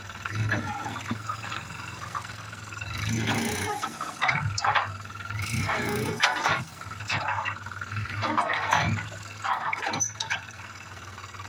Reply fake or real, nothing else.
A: fake